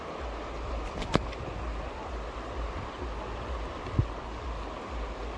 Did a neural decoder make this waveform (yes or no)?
no